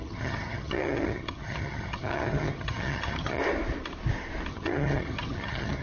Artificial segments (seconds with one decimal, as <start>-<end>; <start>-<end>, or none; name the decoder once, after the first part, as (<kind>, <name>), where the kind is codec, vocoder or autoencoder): 0.0-3.4 (vocoder, HiFi-GAN); 4.5-5.8